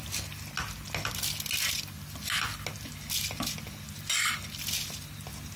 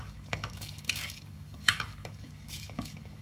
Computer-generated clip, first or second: second